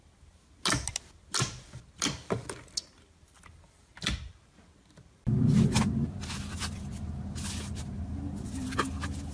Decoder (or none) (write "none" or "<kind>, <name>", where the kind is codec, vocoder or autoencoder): none